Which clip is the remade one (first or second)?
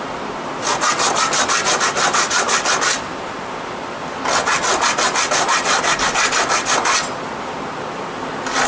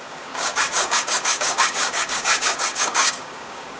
second